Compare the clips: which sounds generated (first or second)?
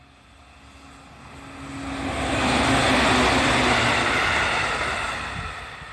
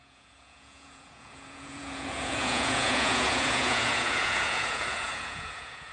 second